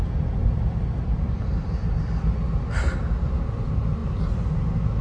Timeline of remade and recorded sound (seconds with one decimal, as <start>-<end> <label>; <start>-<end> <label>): 0.0-5.0 recorded

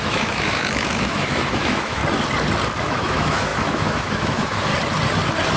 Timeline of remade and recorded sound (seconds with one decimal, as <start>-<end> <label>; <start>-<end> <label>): 0.0-2.0 remade; 2.0-2.8 recorded; 2.8-4.7 remade; 4.7-5.6 recorded